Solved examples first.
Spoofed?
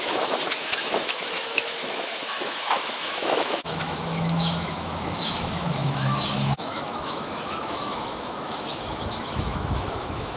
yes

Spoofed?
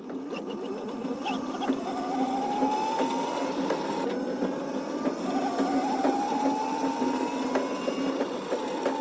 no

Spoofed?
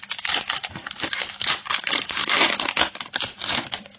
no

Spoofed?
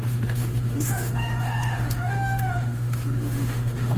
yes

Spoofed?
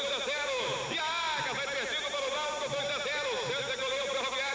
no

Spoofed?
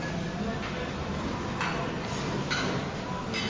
no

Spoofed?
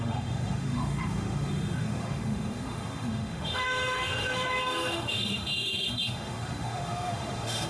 yes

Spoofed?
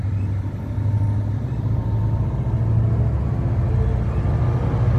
no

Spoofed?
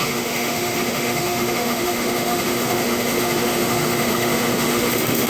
yes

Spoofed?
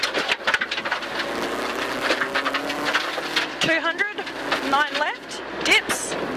no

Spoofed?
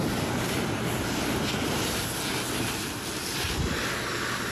no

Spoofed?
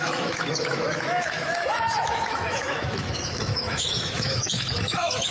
yes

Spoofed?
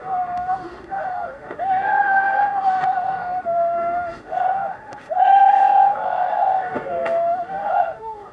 yes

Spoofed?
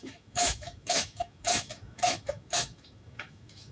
yes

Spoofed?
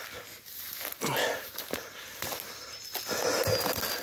no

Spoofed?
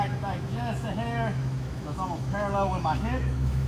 yes